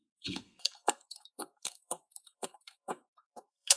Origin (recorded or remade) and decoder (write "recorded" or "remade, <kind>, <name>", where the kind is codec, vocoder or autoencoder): remade, codec, SNAC